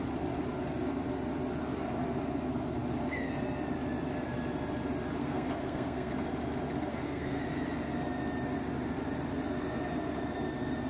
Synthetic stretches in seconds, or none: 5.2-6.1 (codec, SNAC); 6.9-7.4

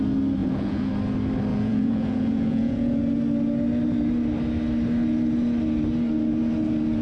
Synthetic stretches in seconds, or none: 0.4-0.9 (vocoder, Vocos); 1.5-3.0

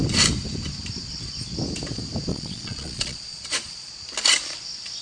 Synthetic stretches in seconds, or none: 2.3-3.9 (vocoder, Vocos)

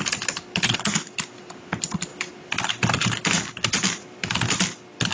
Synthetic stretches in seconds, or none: none

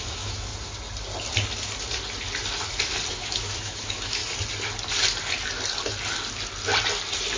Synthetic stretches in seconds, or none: 0.0-0.5 (autoencoder, DAC-VAE); 3.1-4.2

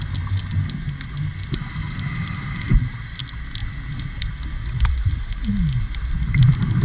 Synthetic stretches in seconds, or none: none

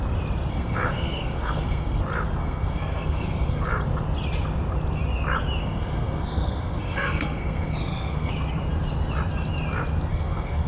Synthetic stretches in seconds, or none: 0.5-2.0 (codec, SNAC); 2.4-3.6; 5.6-8.3; 10.1-10.7